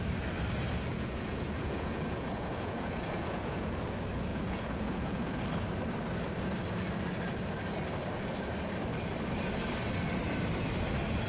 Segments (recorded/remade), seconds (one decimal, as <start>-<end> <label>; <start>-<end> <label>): 0.0-0.9 recorded; 0.9-3.8 remade; 3.8-4.3 recorded; 4.3-5.4 remade; 5.4-11.3 recorded